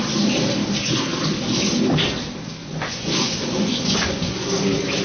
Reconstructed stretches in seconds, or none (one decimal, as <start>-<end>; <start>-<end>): 2.6-4.5